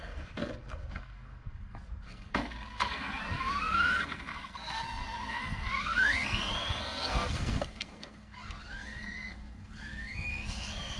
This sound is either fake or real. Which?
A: fake